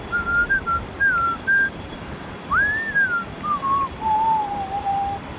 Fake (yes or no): no